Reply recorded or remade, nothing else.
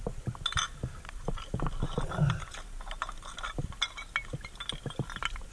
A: recorded